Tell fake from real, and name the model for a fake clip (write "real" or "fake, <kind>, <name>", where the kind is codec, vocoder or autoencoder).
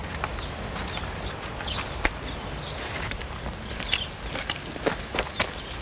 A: real